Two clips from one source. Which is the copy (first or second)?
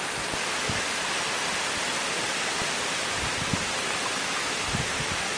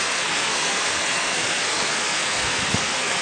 second